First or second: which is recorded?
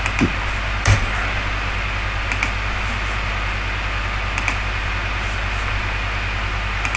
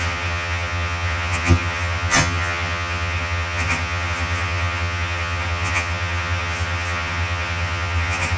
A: first